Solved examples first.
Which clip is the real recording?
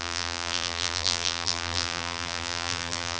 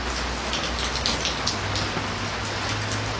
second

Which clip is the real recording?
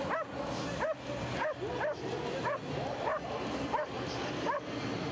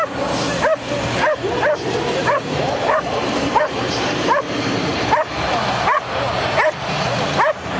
first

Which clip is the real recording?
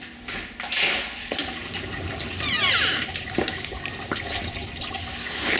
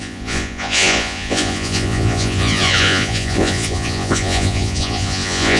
first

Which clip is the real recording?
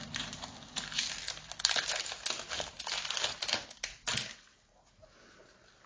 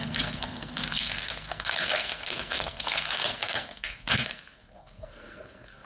first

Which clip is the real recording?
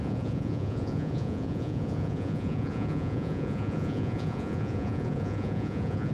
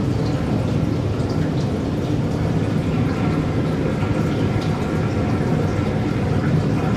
second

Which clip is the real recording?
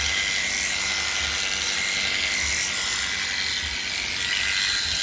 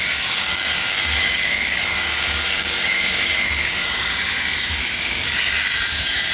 first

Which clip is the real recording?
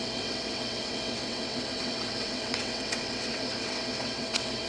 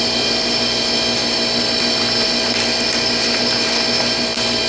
second